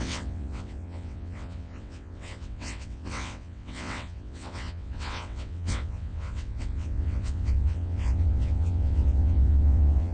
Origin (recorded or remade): remade